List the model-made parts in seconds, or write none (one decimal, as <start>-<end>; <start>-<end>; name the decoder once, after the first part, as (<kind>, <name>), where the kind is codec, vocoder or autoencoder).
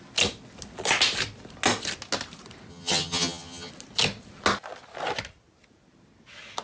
2.7-3.7 (vocoder, HiFi-GAN)